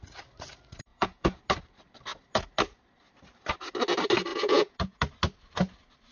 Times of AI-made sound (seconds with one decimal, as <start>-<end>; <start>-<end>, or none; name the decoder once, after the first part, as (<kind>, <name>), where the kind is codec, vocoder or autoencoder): 0.9-1.4 (vocoder, Vocos); 4.3-5.0